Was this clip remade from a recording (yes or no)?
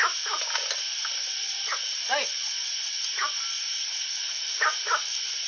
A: no